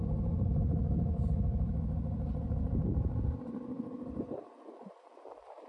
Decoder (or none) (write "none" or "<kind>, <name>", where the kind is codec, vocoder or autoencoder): vocoder, BigVGAN v2